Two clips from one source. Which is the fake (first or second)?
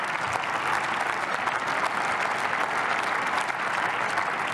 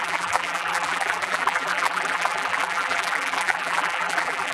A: second